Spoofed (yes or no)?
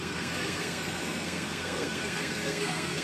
yes